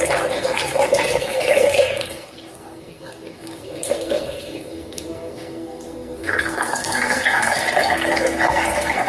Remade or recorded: remade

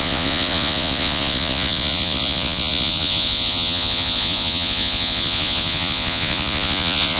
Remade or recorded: remade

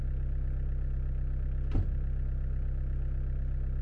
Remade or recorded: recorded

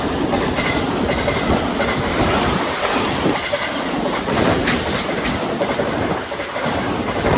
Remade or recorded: recorded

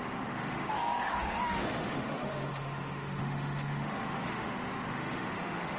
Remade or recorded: remade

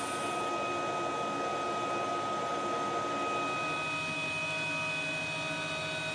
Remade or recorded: recorded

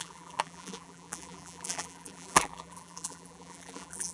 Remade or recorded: remade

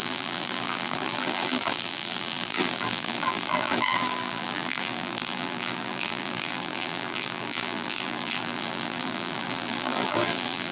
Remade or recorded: remade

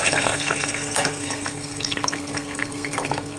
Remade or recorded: remade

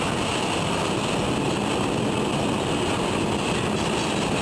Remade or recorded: recorded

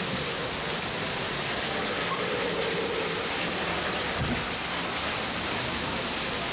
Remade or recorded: recorded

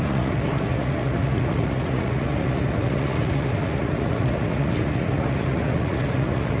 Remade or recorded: remade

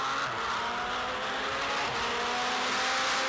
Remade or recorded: recorded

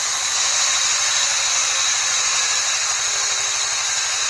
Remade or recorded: recorded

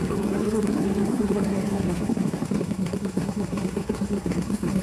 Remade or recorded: remade